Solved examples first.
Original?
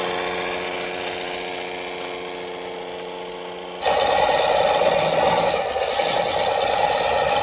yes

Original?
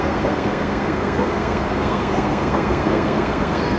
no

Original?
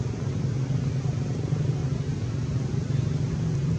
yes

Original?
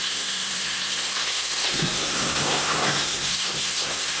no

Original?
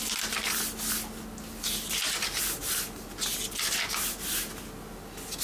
yes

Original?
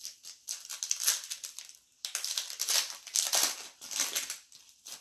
yes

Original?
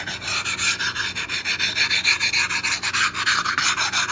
yes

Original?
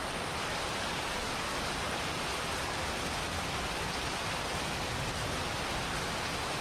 yes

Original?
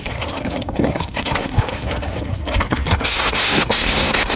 no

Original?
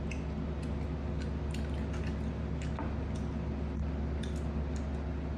yes